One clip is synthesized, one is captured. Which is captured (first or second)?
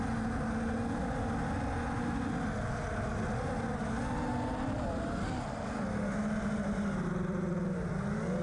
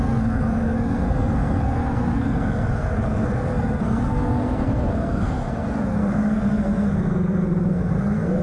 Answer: first